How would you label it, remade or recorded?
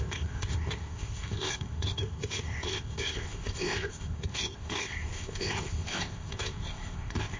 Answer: remade